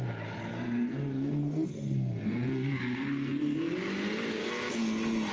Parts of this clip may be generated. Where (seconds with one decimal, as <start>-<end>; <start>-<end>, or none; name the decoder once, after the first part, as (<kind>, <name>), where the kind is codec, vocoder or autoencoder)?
0.5-3.7 (codec, SNAC); 4.3-4.8